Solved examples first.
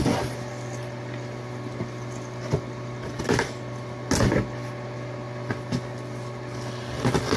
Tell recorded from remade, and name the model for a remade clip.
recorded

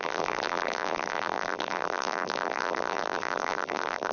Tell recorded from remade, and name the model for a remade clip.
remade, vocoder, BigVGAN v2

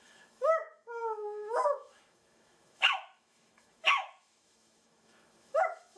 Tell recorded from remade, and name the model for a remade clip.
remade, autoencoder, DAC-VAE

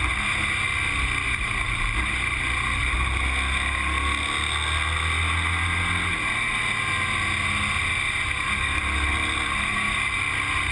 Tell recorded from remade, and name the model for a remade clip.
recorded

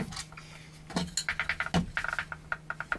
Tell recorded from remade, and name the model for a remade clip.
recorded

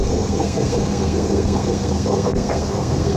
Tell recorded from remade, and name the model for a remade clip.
remade, codec, SNAC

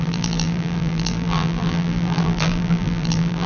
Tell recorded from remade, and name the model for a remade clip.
remade, vocoder, BigVGAN v2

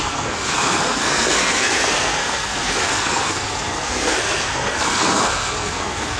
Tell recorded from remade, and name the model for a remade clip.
remade, codec, SNAC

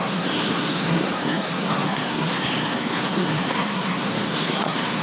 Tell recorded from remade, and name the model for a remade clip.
remade, codec, SNAC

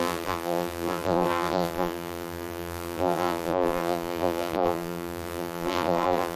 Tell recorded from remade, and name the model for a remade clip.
remade, vocoder, BigVGAN v2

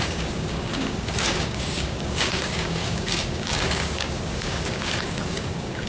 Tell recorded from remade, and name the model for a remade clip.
remade, codec, DAC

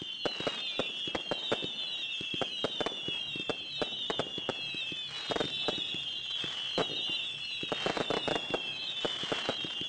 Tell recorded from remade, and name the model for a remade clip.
recorded